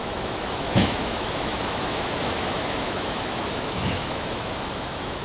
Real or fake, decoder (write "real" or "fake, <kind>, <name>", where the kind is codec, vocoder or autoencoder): fake, autoencoder, DAC-VAE